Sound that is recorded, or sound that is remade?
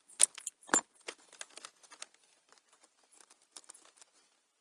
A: recorded